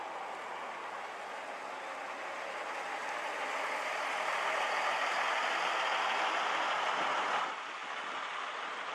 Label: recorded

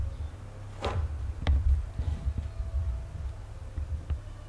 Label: recorded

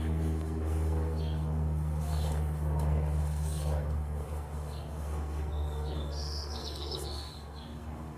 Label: remade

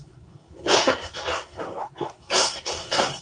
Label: remade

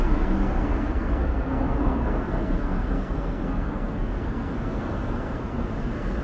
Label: remade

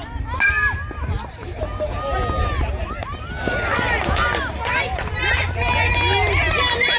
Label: recorded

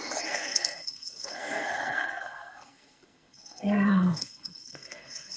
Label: remade